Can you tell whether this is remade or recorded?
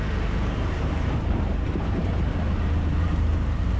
remade